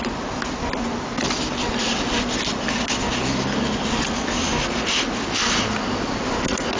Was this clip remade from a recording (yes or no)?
no